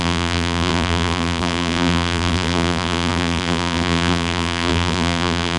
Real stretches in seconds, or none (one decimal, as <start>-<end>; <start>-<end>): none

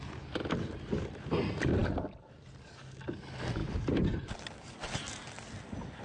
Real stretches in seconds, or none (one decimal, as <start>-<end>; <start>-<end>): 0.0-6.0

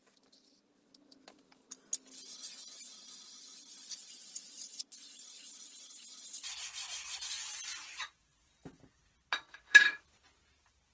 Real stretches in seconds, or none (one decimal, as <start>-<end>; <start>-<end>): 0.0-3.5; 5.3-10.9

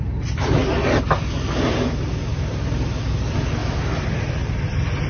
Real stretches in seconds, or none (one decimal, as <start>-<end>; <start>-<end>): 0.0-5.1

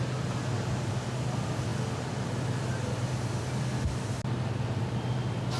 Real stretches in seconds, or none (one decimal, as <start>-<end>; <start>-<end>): 0.0-5.6

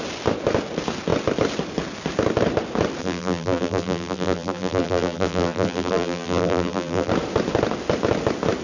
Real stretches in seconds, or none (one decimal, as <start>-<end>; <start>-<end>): 0.0-3.0; 7.1-8.6

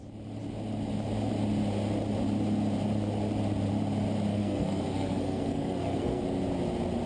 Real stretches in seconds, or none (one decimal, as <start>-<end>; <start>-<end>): 0.0-4.3; 6.2-7.1

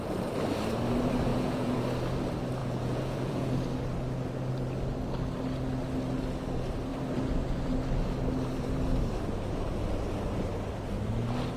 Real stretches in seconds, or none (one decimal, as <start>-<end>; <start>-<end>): 0.0-1.3; 1.8-2.6; 3.5-11.6